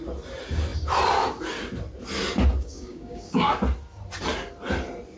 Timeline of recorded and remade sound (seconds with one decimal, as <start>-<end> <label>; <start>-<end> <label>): 0.0-2.6 recorded; 2.6-3.5 remade; 3.5-5.2 recorded